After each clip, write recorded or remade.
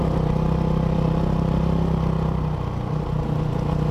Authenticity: recorded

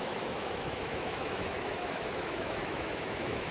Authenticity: remade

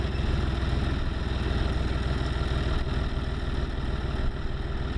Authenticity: recorded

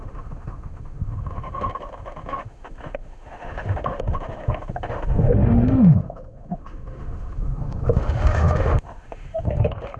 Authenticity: remade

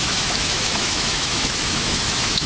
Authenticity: remade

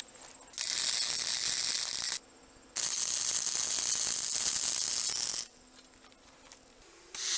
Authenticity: recorded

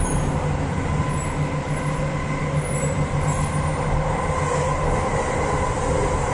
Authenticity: recorded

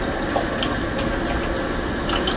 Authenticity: recorded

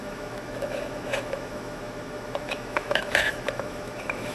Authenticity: remade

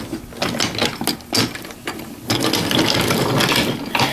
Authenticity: recorded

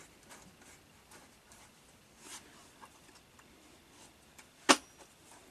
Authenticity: recorded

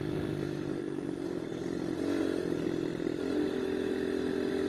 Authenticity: recorded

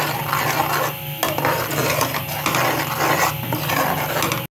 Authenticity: recorded